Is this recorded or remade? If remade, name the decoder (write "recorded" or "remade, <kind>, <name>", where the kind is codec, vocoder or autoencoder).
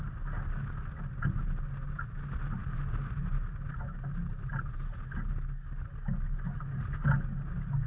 recorded